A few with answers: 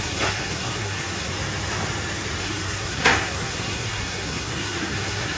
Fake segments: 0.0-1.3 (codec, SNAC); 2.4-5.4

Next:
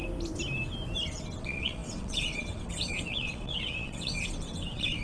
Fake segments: 1.4-5.0 (vocoder, WaveNeXt)